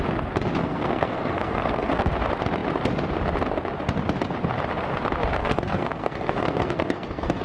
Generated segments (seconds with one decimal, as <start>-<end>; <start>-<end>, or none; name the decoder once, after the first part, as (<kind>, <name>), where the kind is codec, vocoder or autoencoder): 0.6-2.1 (codec, SNAC); 5.3-7.4